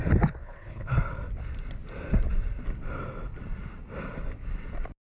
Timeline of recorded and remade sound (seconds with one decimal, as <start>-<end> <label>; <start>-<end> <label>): 0.0-0.4 recorded; 0.4-0.9 remade; 0.9-5.1 recorded